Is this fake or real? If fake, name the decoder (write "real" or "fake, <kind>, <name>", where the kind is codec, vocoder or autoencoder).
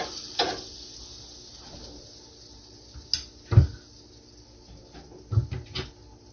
real